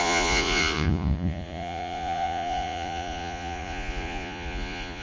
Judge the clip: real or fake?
fake